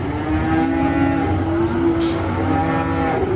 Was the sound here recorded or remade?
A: recorded